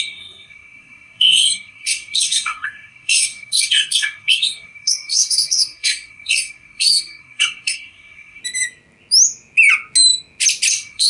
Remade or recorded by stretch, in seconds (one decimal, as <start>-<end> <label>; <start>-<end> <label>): 0.0-8.4 remade; 8.4-10.7 recorded; 10.7-11.1 remade